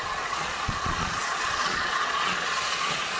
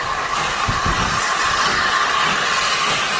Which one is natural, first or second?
second